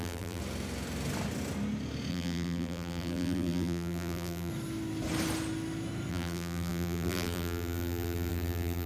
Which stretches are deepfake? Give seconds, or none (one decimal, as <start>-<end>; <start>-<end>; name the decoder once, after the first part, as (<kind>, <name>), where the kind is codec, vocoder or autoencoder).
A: 0.0-0.4 (vocoder, BigVGAN v2); 2.1-4.5; 6.1-8.9